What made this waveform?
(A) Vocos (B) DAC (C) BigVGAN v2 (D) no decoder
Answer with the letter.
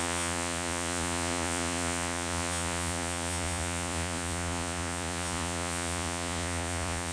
A